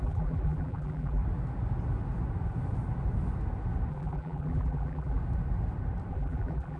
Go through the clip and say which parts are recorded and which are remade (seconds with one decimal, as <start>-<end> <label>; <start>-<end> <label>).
0.0-1.2 remade; 1.2-3.9 recorded; 3.9-5.2 remade; 5.2-6.1 recorded; 6.1-6.8 remade